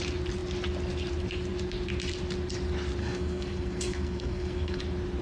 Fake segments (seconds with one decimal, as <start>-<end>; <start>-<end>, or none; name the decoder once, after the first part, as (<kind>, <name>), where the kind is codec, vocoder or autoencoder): 3.0-4.8 (codec, SNAC)